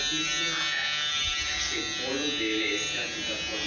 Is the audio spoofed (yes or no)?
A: no